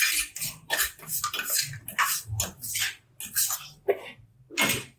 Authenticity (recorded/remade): recorded